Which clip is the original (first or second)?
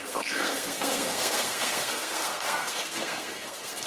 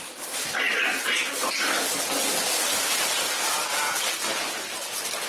second